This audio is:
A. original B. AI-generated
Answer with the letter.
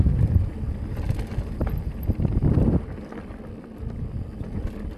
A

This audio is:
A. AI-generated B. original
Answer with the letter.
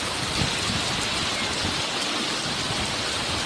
B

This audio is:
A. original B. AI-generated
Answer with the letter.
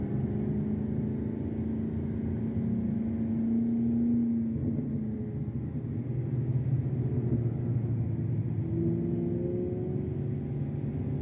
A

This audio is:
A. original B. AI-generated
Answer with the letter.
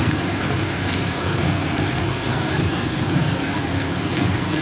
B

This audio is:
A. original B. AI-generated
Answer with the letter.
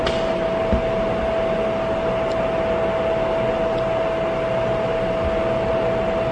A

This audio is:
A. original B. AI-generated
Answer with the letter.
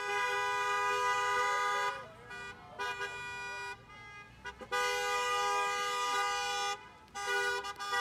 A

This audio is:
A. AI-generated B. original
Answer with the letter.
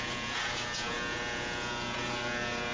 A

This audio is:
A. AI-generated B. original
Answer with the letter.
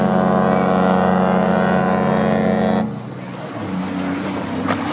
B